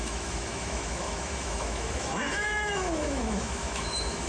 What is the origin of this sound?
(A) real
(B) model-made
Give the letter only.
B